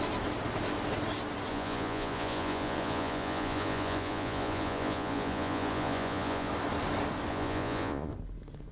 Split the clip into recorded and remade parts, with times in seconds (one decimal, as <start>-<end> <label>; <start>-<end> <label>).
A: 0.0-1.5 recorded; 1.5-6.5 remade; 6.5-7.3 recorded; 7.3-8.1 remade; 8.1-8.7 recorded